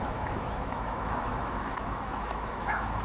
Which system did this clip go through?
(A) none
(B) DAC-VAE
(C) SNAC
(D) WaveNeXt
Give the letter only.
B